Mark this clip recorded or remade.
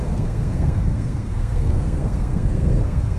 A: remade